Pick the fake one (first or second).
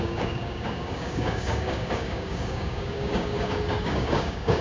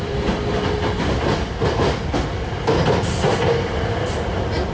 first